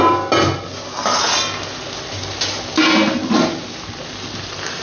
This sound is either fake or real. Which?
real